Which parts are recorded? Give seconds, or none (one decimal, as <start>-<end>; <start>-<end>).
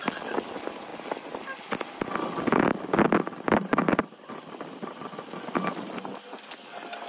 0.0-2.7; 6.0-7.1